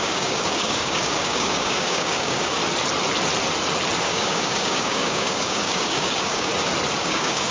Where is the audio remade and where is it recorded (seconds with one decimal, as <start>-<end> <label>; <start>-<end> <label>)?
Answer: 0.0-2.6 remade; 2.6-4.0 recorded; 4.0-6.5 remade; 6.5-7.0 recorded; 7.0-7.5 remade